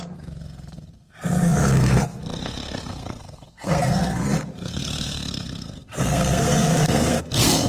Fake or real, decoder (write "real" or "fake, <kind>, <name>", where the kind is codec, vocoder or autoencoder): fake, codec, SNAC